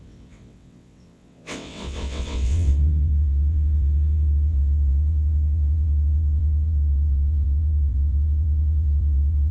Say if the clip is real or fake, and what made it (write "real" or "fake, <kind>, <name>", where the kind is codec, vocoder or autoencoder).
fake, vocoder, WaveNeXt